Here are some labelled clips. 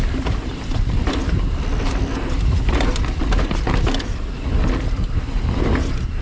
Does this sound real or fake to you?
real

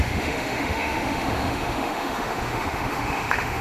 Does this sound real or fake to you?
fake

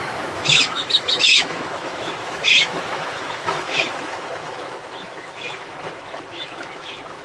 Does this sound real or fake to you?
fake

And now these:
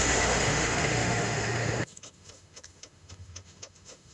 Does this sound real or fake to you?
fake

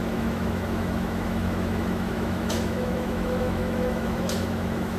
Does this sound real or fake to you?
fake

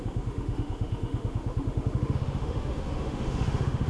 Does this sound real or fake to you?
fake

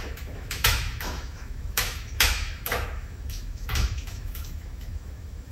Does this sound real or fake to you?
fake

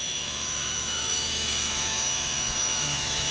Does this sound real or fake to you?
fake